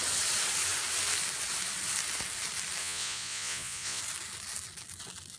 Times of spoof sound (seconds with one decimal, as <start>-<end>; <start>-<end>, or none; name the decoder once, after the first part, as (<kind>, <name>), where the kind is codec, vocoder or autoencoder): 2.8-4.0 (vocoder, Vocos)